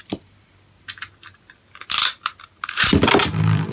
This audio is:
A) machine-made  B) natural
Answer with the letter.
B